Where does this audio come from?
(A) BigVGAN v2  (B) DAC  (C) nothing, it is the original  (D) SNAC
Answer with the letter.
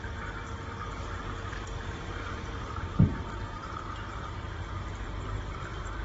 A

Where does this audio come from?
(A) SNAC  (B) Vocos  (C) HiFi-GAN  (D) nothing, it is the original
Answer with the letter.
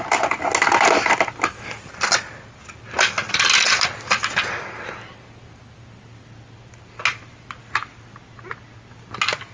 D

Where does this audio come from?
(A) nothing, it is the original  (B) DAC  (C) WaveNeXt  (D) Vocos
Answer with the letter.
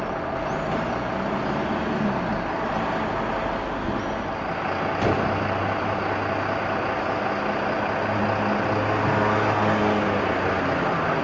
A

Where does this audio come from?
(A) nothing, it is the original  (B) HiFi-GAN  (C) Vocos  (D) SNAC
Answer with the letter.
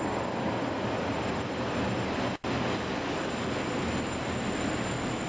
A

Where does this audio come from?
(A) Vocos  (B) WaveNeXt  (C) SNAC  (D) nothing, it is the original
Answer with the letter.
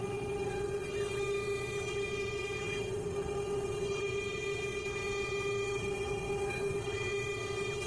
B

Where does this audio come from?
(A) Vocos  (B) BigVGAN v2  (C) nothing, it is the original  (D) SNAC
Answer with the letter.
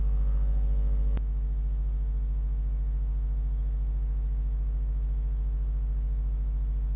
C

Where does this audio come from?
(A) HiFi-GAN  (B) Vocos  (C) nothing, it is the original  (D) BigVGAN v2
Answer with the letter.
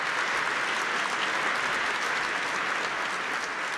C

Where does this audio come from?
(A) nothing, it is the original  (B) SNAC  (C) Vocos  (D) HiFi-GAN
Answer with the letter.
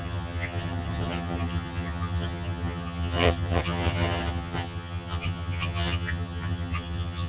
D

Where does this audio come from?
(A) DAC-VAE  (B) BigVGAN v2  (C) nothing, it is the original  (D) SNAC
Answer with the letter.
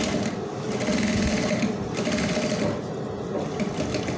C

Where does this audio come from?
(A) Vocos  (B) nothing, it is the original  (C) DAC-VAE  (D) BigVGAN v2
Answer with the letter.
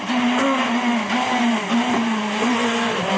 B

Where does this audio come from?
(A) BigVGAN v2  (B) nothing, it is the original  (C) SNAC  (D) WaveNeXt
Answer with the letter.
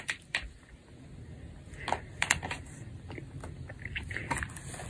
B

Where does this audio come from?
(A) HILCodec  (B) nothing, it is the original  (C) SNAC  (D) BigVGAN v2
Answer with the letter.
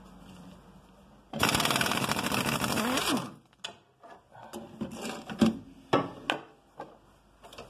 B